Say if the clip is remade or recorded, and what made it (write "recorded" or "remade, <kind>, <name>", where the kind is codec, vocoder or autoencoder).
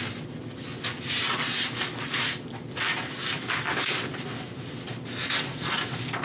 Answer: recorded